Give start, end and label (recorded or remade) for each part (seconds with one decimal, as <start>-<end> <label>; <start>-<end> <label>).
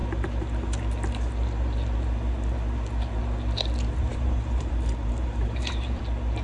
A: 0.0-4.1 recorded; 4.1-6.0 remade; 6.0-6.4 recorded